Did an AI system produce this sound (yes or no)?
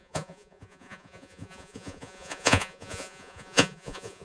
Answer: yes